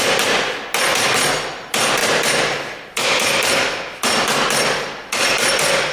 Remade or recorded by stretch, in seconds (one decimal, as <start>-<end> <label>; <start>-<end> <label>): 0.0-2.0 recorded; 2.0-5.5 remade; 5.5-5.9 recorded